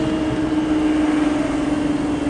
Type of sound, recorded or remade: recorded